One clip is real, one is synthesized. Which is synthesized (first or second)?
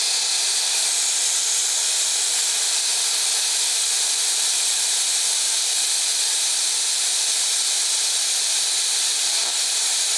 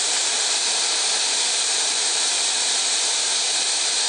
second